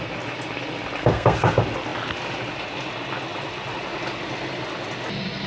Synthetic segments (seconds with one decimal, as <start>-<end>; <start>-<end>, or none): 1.0-1.5